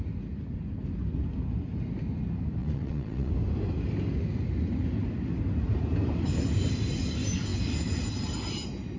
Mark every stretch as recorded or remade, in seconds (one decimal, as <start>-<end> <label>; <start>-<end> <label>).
0.0-2.6 recorded; 2.6-3.3 remade; 3.3-9.0 recorded